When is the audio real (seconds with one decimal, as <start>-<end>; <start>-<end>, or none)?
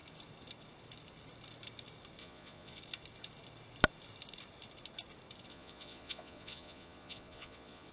0.0-2.2; 2.8-5.5